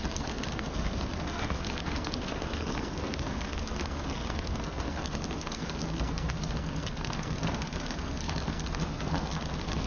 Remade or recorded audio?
remade